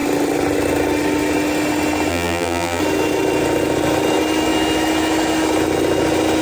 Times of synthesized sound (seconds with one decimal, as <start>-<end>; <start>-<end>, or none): 2.1-2.8